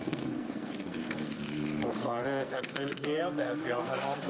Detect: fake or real fake